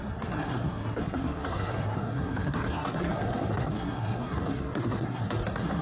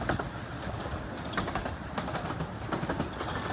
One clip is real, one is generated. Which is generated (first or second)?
first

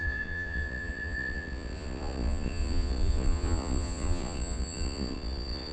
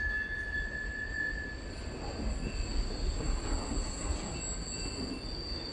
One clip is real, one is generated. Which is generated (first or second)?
first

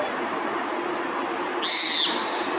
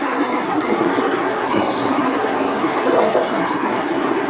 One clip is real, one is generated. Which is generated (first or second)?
second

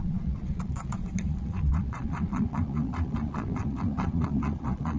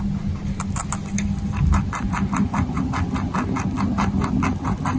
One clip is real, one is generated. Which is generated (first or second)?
first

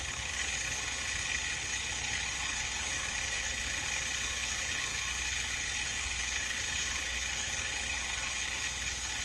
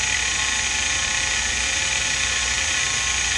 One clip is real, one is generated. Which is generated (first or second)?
first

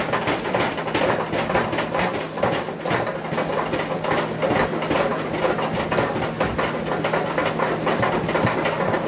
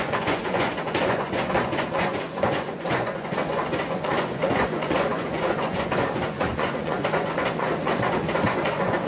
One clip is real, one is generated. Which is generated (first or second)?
second